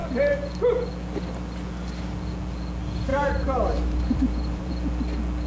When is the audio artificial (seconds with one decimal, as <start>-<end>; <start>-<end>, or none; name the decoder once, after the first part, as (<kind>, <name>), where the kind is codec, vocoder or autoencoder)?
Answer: 3.1-4.7 (vocoder, BigVGAN v2)